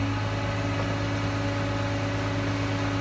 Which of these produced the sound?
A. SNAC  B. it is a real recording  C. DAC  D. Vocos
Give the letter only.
B